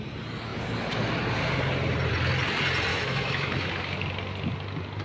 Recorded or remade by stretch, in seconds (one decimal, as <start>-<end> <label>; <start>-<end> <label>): 0.0-2.9 recorded; 2.9-3.7 remade; 3.7-5.0 recorded